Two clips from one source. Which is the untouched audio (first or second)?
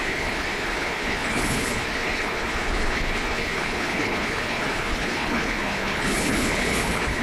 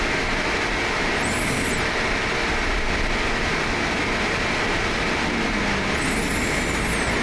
second